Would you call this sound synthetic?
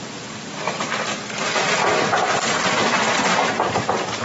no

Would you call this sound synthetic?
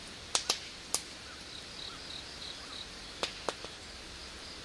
no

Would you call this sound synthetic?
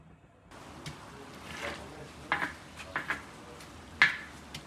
no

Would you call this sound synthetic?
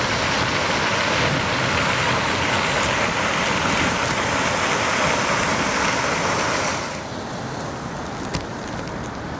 no